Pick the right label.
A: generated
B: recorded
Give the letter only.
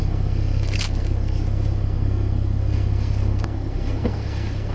A